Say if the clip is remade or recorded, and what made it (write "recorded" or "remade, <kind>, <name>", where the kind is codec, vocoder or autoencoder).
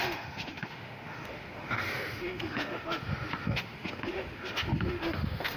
remade, autoencoder, DAC-VAE